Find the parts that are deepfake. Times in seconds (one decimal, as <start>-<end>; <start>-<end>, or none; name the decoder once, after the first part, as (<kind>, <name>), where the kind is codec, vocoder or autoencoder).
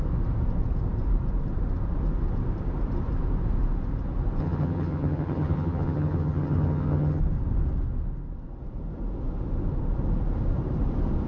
4.4-7.2 (vocoder, HiFi-GAN)